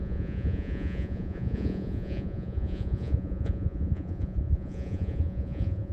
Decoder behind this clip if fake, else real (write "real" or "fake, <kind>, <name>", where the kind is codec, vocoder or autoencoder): fake, vocoder, Vocos